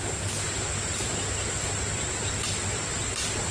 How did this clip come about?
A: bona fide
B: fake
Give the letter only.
A